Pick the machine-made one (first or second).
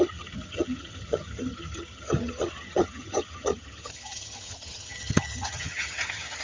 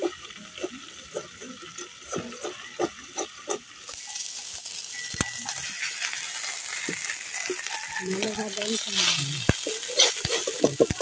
first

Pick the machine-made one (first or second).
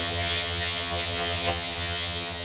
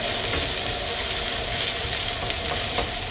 first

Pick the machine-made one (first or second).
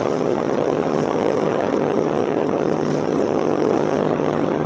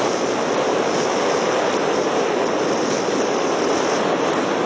first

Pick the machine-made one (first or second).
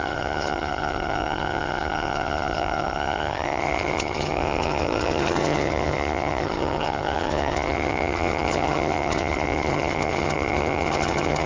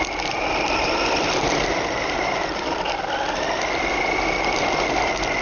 first